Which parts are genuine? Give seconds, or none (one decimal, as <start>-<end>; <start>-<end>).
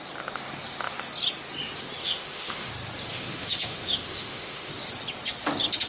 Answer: 0.0-2.0; 2.7-3.1; 4.7-5.9